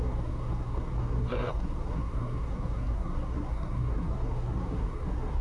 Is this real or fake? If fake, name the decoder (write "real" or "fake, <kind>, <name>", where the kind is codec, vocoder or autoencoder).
fake, codec, SNAC